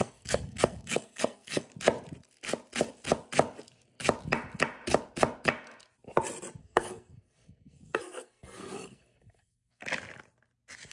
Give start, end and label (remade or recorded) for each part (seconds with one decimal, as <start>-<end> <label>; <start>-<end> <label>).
0.0-1.7 remade; 1.7-6.6 recorded; 6.6-9.8 remade; 9.8-10.9 recorded